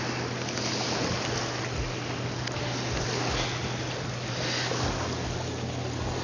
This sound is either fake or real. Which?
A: real